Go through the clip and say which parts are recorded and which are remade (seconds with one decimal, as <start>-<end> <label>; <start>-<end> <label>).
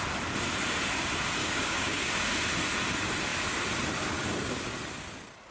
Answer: 0.0-1.4 recorded; 1.4-2.1 remade; 2.1-5.5 recorded